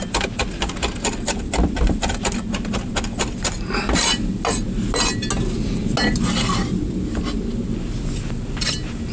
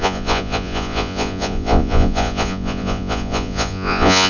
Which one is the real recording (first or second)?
first